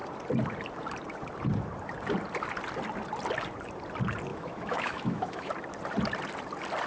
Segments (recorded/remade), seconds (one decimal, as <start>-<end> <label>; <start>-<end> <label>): 0.0-4.3 recorded; 4.3-5.5 remade; 5.5-6.9 recorded